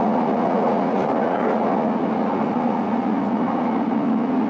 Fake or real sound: fake